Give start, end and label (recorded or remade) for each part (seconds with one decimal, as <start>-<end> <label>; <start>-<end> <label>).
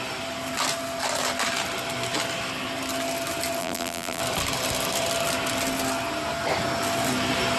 0.0-3.6 recorded; 3.6-4.2 remade; 4.2-7.6 recorded